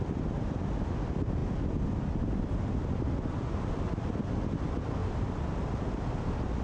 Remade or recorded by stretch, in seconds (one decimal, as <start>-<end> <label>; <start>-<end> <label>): 0.0-6.6 recorded